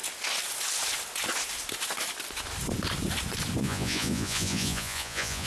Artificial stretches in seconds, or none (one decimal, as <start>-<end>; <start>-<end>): 3.6-5.5